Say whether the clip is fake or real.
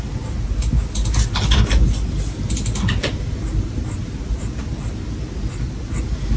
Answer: real